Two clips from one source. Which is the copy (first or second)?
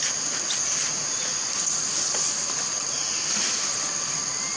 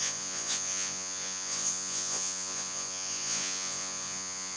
second